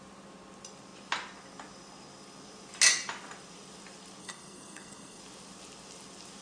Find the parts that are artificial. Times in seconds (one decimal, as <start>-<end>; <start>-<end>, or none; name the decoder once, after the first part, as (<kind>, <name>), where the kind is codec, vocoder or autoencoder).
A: 4.2-5.2 (codec, SNAC)